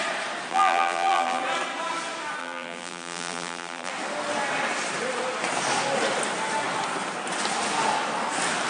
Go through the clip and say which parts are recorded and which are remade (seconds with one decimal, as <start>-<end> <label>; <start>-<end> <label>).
0.0-0.5 recorded; 0.5-1.4 remade; 1.4-2.4 recorded; 2.4-3.9 remade; 3.9-8.7 recorded